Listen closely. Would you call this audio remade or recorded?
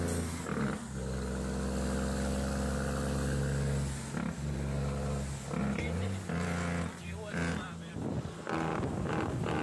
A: recorded